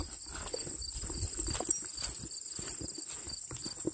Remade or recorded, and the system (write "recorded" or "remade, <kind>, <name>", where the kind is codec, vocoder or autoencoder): recorded